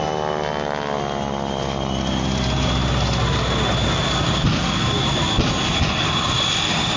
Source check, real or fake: real